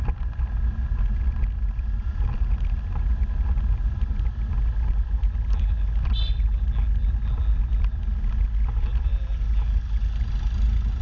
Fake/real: real